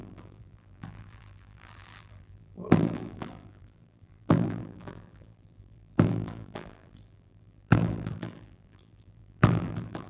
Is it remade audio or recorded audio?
remade